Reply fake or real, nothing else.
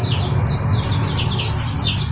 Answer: real